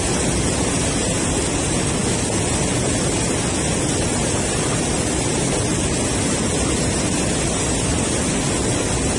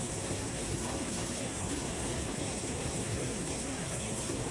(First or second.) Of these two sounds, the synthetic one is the second